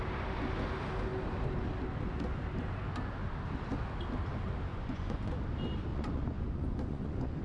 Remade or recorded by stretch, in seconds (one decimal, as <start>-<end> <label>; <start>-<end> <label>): 0.0-4.7 recorded; 4.7-5.4 remade; 5.4-5.9 recorded; 5.9-7.4 remade